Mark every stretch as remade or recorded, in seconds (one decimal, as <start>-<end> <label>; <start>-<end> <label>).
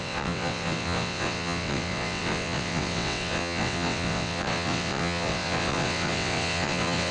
0.0-7.1 remade